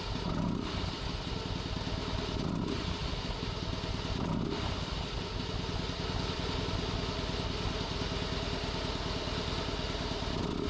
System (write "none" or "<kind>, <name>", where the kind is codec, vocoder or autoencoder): none